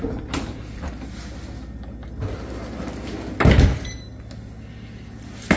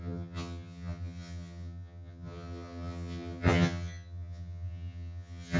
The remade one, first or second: second